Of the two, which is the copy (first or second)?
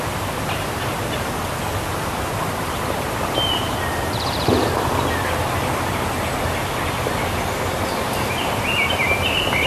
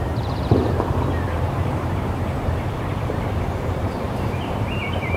second